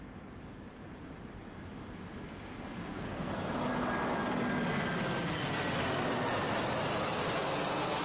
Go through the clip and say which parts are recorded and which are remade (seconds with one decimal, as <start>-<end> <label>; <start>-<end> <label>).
0.0-2.9 recorded; 2.9-3.5 remade; 3.5-8.0 recorded

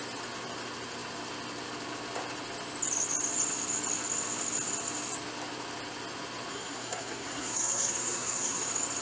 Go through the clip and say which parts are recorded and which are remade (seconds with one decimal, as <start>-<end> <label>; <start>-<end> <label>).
0.0-6.5 recorded; 6.5-8.6 remade; 8.6-9.0 recorded

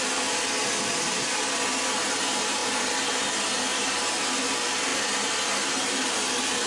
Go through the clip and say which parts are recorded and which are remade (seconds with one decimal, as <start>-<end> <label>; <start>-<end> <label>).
0.0-6.7 recorded

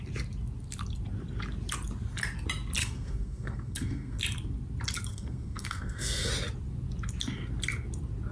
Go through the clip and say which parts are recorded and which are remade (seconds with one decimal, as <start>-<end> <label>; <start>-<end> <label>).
0.0-2.8 recorded; 2.8-4.2 remade; 4.2-5.1 recorded; 5.1-6.3 remade; 6.3-8.3 recorded

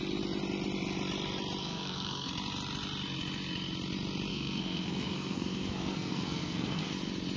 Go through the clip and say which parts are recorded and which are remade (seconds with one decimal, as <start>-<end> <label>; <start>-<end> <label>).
0.0-1.6 recorded; 1.6-2.3 remade; 2.3-4.3 recorded; 4.3-6.9 remade; 6.9-7.4 recorded

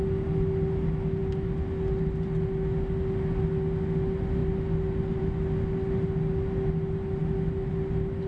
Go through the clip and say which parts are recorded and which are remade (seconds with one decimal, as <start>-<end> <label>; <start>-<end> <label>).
0.0-8.3 recorded